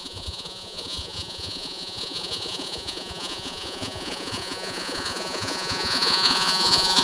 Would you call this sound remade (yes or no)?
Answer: yes